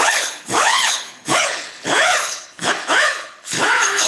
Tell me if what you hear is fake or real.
fake